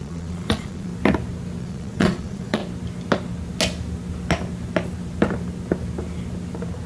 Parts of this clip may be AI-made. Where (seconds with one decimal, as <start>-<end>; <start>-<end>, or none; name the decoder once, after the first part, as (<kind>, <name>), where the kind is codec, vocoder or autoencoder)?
0.0-0.9 (vocoder, Vocos); 1.6-2.6